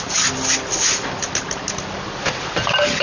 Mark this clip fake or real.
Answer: real